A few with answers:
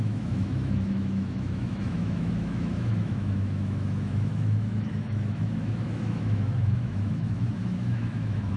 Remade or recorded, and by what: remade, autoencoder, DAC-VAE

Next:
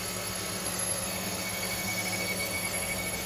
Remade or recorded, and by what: remade, codec, SNAC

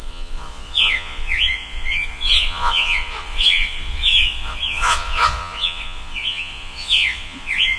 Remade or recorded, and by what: remade, vocoder, Vocos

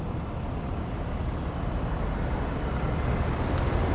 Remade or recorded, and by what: recorded